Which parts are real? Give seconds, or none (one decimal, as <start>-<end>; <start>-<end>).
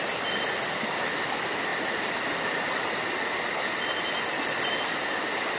0.0-5.6